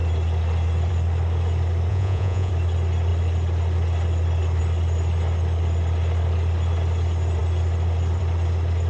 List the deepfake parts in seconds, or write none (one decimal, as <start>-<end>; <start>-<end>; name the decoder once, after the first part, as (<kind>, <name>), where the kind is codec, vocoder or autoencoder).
1.9-2.5 (vocoder, Vocos)